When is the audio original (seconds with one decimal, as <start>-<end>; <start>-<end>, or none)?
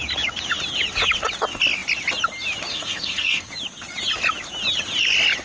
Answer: 0.0-2.7; 3.5-5.4